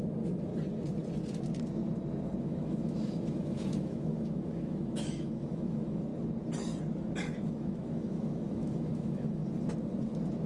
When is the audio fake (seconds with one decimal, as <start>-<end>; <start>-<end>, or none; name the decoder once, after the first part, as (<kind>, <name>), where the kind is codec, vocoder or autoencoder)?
0.0-0.5 (autoencoder, DAC-VAE); 2.4-6.1; 7.3-9.4